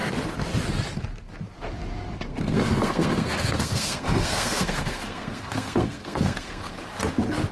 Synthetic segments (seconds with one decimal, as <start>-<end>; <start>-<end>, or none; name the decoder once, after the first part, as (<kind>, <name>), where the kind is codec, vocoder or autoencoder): 2.3-6.7 (codec, SNAC)